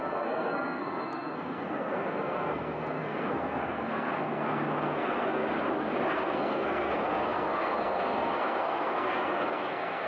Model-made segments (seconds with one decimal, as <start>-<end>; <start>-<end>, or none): 0.0-5.4; 6.1-10.1